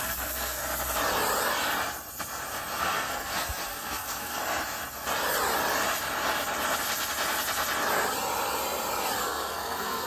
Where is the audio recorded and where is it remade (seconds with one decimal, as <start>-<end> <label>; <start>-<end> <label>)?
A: 0.0-0.6 remade; 0.6-2.8 recorded; 2.8-4.4 remade; 4.4-9.2 recorded; 9.2-10.1 remade